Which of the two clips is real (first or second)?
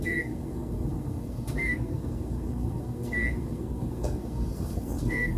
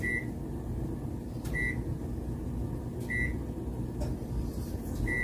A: second